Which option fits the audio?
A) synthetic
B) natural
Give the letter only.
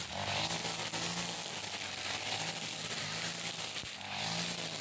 B